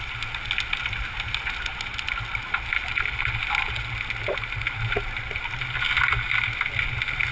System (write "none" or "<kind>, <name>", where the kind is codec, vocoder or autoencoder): none